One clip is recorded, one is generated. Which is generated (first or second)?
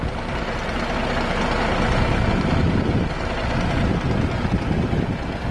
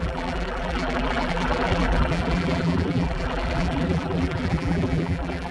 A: second